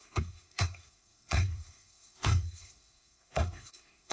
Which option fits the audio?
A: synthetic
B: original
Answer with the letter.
A